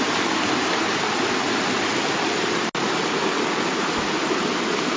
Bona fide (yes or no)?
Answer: yes